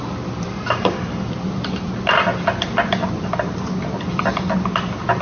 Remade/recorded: recorded